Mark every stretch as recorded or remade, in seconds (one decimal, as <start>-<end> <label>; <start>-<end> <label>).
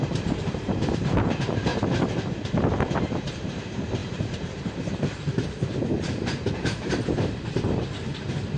0.0-1.7 remade; 1.7-3.4 recorded; 3.4-8.6 remade